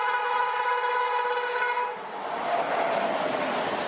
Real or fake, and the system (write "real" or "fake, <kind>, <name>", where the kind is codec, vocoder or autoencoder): real